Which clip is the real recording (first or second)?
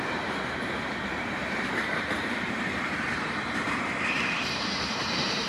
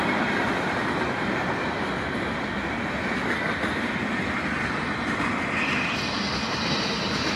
second